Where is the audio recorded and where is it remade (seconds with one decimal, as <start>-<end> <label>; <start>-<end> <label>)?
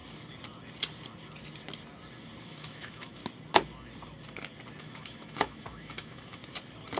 0.0-2.4 recorded; 2.4-3.2 remade; 3.2-4.8 recorded; 4.8-6.4 remade; 6.4-7.0 recorded